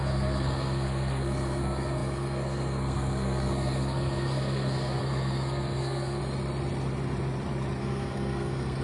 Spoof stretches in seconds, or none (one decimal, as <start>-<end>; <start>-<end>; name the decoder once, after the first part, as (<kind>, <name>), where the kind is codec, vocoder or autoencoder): 0.0-6.2 (codec, SNAC); 7.8-8.8